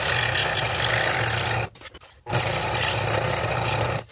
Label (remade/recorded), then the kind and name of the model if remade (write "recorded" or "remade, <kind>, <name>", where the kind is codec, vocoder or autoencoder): recorded